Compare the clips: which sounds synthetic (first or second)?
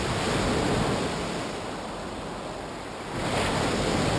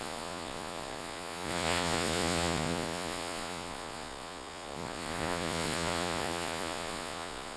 second